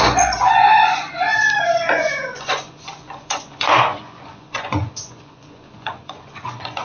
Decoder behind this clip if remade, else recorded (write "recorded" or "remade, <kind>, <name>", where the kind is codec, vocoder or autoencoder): remade, vocoder, Vocos